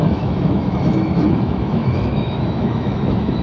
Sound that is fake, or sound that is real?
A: fake